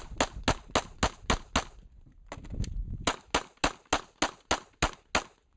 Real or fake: real